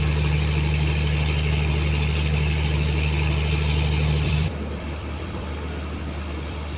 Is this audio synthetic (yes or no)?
yes